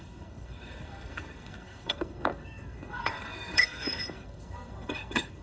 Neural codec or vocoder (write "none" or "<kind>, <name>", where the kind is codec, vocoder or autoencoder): codec, SNAC